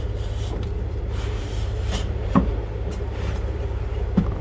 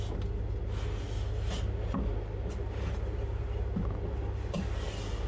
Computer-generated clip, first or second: first